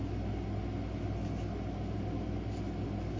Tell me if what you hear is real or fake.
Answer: real